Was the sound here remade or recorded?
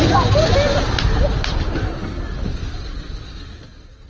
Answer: recorded